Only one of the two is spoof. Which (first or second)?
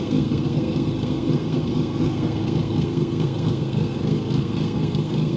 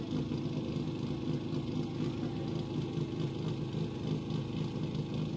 first